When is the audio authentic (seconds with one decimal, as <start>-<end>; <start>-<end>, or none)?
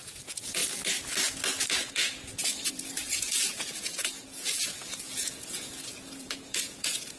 0.6-1.7